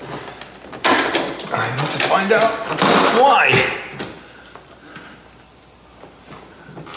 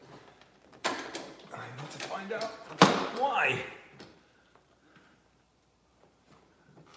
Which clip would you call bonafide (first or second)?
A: first